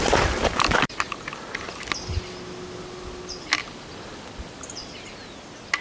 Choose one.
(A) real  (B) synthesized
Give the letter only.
A